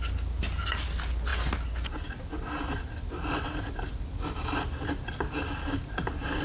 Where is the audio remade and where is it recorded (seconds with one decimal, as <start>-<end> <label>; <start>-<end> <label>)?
0.0-6.4 recorded